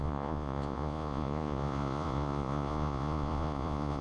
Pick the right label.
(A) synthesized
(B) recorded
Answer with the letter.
A